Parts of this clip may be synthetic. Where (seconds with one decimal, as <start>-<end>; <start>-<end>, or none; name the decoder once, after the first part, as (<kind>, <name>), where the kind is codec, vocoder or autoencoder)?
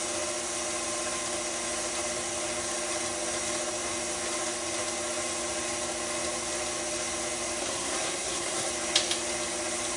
7.6-8.7 (codec, SNAC)